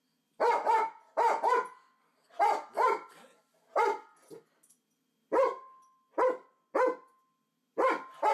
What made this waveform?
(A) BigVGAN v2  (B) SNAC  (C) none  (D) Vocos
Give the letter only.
C